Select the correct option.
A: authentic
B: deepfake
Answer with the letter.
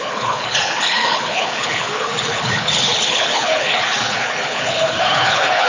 B